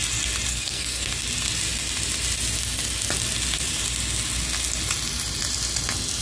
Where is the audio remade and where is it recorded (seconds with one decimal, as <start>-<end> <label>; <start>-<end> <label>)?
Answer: 0.0-0.5 recorded; 0.5-1.1 remade; 1.1-6.2 recorded